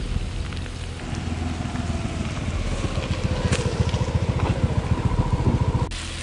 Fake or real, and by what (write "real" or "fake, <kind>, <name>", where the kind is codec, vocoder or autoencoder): real